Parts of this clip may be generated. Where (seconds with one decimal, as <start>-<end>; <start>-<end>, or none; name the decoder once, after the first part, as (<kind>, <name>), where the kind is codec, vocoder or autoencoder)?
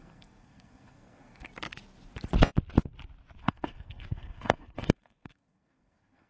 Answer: 0.0-1.5 (codec, SNAC); 3.4-6.3